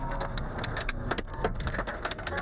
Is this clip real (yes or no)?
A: no